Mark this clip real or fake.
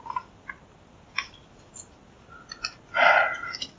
real